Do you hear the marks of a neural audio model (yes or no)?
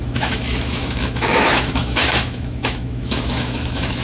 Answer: yes